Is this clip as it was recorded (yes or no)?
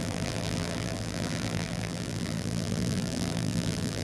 no